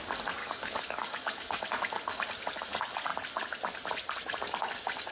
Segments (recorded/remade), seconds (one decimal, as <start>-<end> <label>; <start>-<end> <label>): 0.0-0.4 recorded; 0.4-2.2 remade; 2.2-5.1 recorded